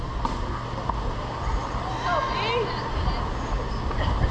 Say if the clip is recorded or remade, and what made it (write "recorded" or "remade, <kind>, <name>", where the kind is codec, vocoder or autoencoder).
recorded